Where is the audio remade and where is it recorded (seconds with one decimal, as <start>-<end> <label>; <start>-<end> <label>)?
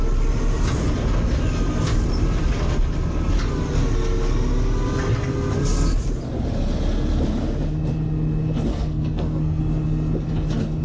0.0-8.7 recorded; 8.7-9.6 remade; 9.6-10.8 recorded